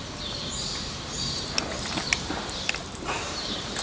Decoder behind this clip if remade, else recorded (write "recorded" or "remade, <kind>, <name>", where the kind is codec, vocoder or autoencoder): remade, vocoder, BigVGAN v2